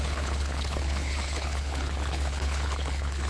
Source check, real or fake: fake